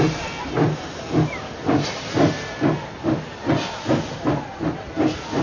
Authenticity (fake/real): real